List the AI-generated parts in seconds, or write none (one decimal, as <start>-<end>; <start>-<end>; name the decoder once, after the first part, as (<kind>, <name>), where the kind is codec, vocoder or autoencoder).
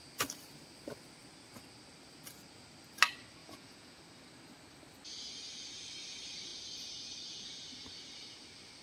3.4-4.0 (vocoder, Vocos)